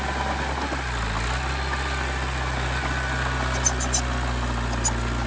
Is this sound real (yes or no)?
yes